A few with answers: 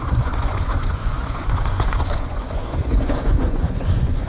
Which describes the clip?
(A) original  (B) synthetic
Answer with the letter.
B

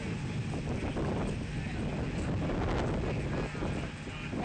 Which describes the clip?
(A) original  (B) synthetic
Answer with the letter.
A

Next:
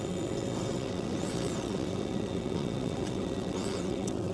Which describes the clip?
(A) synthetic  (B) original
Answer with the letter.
A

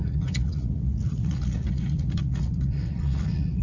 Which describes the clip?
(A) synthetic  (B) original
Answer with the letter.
A